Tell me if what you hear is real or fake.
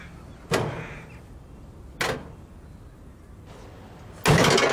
real